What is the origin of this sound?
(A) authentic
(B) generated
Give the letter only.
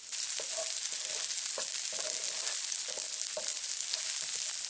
A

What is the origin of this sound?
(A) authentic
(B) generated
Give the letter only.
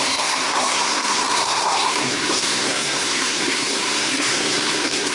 B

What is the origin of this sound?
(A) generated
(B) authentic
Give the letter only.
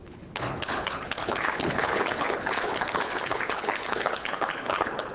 A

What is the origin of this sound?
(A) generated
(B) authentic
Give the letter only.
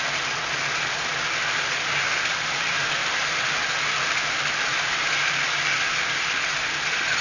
B